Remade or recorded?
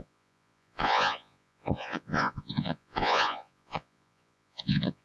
remade